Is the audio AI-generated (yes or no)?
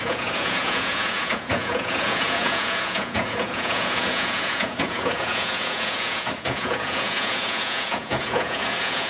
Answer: yes